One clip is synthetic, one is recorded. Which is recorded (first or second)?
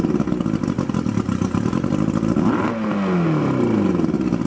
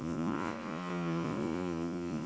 first